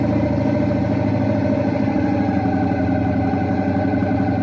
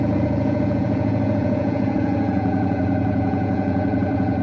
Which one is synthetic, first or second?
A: second